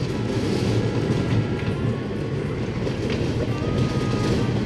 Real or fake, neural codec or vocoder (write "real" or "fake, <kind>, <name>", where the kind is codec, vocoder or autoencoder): real